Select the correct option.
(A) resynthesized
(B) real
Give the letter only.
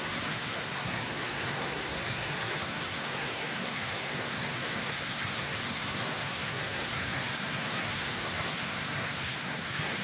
A